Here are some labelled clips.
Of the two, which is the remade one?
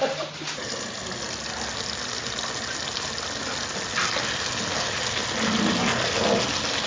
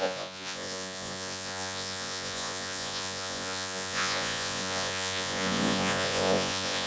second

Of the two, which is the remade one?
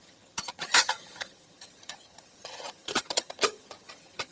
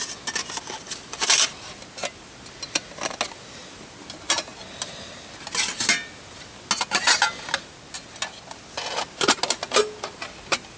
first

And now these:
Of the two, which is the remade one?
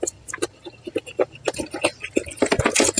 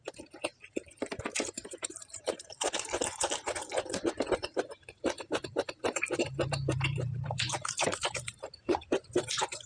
second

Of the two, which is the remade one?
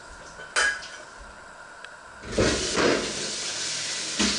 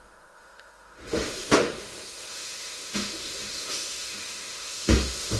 second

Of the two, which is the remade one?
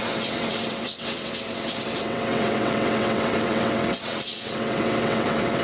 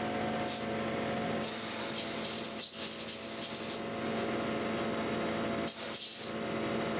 first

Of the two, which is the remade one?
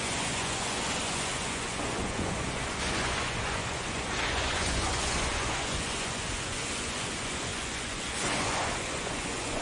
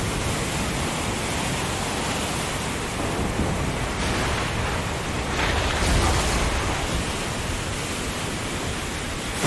first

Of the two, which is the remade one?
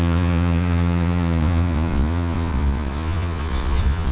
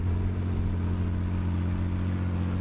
first